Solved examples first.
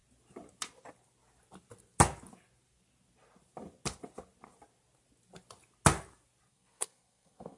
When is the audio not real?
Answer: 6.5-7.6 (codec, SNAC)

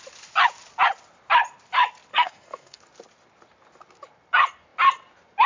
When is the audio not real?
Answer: 2.1-2.8 (codec, SNAC)

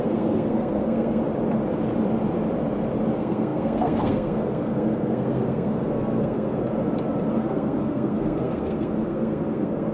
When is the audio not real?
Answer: 0.0-1.2 (codec, SNAC); 3.1-6.6; 7.3-9.9

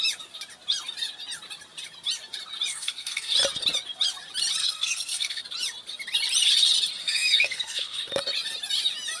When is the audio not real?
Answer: 2.7-3.3 (codec, SNAC); 4.6-5.4; 7.0-8.0

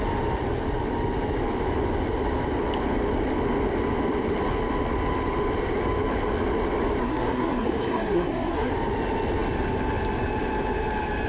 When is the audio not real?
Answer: 7.0-8.7 (codec, SNAC)

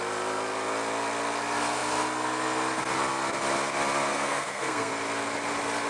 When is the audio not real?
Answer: 4.1-4.9 (codec, SNAC)